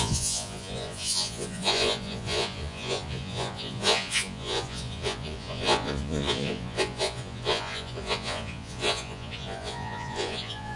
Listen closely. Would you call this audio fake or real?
fake